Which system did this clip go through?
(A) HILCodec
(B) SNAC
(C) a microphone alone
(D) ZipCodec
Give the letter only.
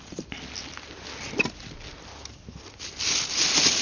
C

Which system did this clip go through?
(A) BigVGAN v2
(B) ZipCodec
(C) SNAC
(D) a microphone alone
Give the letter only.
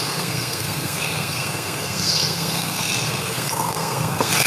C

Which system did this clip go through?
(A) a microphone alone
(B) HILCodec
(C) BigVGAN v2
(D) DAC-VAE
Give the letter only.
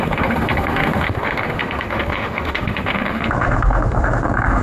D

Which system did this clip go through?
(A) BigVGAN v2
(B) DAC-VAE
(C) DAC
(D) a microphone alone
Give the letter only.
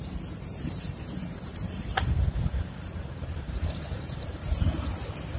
A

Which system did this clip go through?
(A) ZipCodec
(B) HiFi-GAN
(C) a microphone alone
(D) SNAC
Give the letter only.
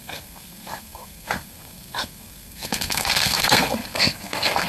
D